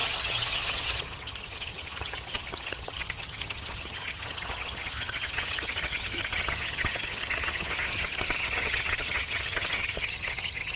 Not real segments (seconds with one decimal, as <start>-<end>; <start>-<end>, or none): 0.0-10.8